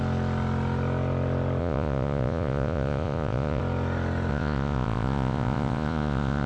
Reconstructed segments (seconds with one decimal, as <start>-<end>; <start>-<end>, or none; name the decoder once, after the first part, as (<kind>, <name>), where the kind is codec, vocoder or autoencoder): 1.6-3.6 (vocoder, Vocos); 4.3-6.5